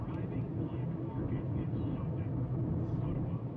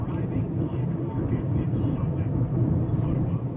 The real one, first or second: first